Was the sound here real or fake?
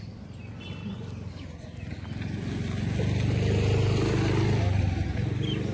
real